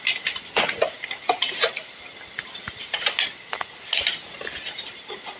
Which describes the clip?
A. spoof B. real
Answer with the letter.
B